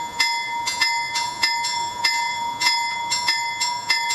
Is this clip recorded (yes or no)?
no